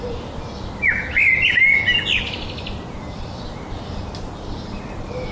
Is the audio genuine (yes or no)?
yes